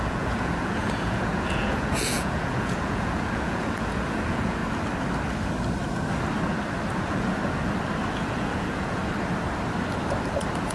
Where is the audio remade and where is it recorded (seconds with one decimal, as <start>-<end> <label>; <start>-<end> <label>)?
0.0-4.6 remade; 4.6-6.9 recorded; 6.9-7.4 remade; 7.4-8.1 recorded; 8.1-9.0 remade; 9.0-10.7 recorded